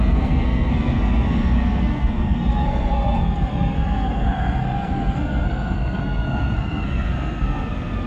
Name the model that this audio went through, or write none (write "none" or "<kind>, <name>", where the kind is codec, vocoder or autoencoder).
codec, SNAC